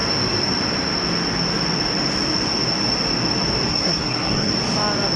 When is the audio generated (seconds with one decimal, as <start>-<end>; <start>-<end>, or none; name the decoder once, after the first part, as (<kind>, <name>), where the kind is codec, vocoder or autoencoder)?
3.7-4.5 (codec, SNAC)